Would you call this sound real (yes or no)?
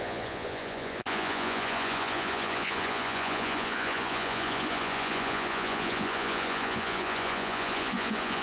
no